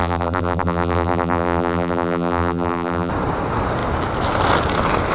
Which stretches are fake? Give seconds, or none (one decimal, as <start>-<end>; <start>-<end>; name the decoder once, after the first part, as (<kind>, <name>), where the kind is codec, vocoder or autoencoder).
0.0-3.1 (vocoder, BigVGAN v2)